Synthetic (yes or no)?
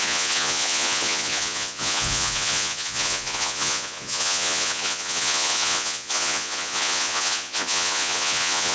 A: yes